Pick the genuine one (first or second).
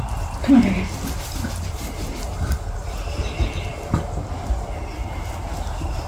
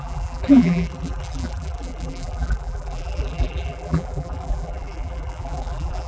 first